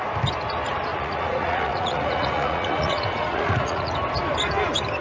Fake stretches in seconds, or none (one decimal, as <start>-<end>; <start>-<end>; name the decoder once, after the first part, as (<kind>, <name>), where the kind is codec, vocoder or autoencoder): 0.9-3.9 (vocoder, Vocos)